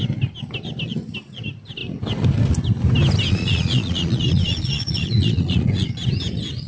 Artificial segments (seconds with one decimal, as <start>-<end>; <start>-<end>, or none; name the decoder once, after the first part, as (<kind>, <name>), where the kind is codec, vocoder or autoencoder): 3.3-5.9 (vocoder, Vocos)